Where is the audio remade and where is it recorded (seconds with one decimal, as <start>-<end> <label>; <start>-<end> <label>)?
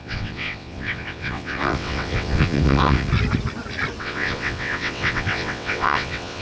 0.0-3.1 remade; 3.1-4.0 recorded; 4.0-6.4 remade